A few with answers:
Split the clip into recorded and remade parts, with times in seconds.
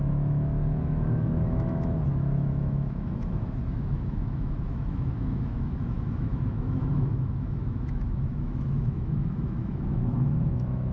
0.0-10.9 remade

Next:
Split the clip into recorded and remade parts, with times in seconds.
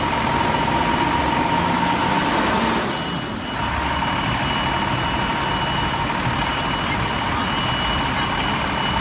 0.0-9.0 recorded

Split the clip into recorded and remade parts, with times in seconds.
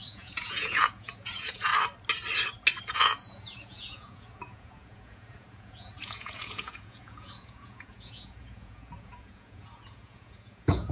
0.0-1.7 remade; 1.7-2.8 recorded; 2.8-10.9 remade